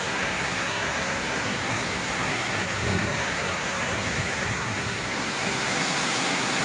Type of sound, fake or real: fake